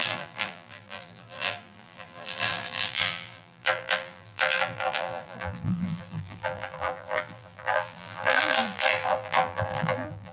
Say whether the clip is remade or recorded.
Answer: remade